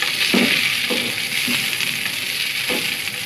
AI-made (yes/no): no